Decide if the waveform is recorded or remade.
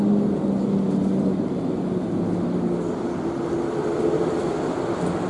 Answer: recorded